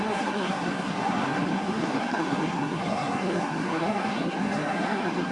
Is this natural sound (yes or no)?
no